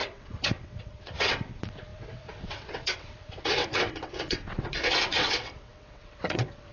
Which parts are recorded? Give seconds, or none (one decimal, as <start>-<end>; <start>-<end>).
none